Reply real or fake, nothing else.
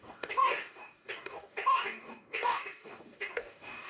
fake